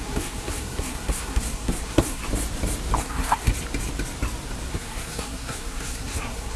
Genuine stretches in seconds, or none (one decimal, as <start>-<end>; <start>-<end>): 2.2-3.0; 3.5-4.7